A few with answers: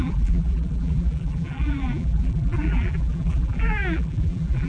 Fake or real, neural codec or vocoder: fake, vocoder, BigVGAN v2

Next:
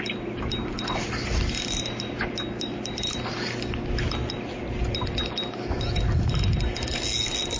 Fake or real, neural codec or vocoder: real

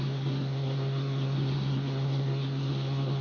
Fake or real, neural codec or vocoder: fake, codec, SNAC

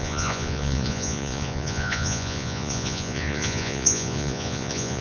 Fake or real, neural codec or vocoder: fake, vocoder, Vocos